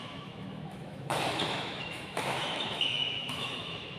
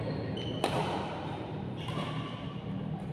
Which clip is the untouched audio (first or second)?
second